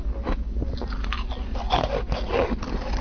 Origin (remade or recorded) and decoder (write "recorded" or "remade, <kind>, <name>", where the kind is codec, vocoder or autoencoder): recorded